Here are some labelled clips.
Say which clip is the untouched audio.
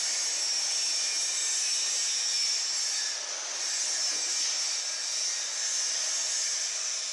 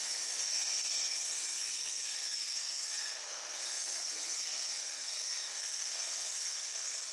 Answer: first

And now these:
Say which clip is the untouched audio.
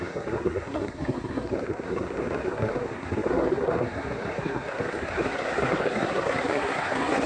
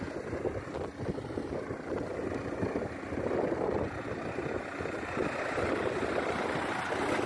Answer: second